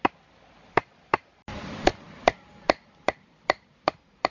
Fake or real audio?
fake